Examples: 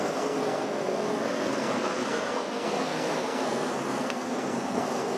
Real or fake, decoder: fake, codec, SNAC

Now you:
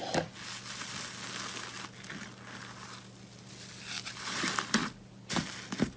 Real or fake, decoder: real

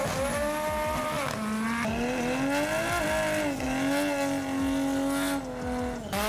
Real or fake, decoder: real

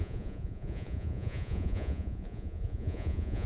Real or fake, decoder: fake, vocoder, Vocos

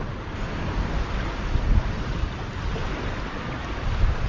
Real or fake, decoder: real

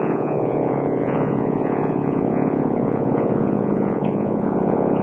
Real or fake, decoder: fake, vocoder, Vocos